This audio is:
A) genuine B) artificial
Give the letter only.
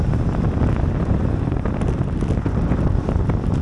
A